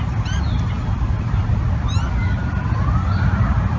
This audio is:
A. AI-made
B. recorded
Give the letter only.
B